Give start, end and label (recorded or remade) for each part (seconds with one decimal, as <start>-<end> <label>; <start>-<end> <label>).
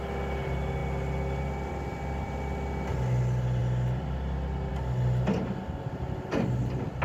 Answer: 0.0-7.0 recorded